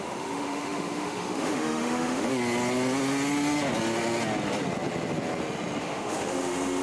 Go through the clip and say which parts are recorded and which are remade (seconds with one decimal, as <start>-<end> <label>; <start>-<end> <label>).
0.0-2.3 remade; 2.3-5.8 recorded; 5.8-6.8 remade